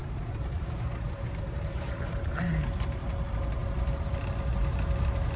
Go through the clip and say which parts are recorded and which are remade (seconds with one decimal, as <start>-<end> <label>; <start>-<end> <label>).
0.0-2.4 remade; 2.4-5.4 recorded